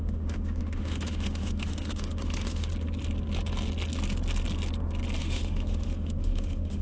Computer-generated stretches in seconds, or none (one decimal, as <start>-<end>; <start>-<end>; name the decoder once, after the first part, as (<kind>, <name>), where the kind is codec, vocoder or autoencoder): 0.0-2.7 (autoencoder, DAC-VAE); 5.2-6.8